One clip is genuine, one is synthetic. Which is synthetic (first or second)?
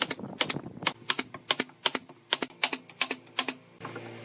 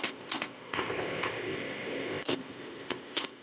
second